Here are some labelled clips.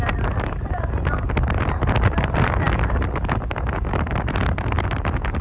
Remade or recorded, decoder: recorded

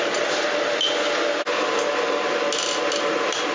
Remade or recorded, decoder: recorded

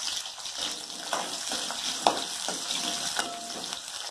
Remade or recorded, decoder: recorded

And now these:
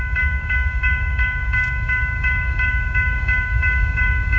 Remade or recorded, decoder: remade, codec, DAC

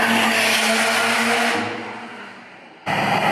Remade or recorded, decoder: recorded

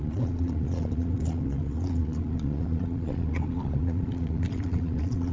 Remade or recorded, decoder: remade, vocoder, Vocos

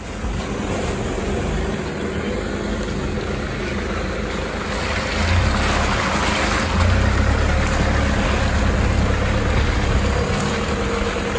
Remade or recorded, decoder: recorded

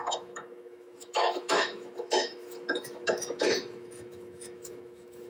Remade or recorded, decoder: remade, autoencoder, DAC-VAE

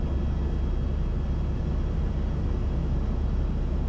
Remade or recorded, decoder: recorded